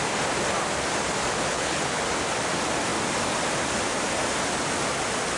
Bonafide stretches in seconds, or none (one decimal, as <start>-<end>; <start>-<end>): 0.0-1.5; 2.0-5.4